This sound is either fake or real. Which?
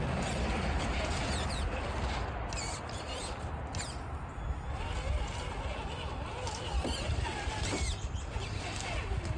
real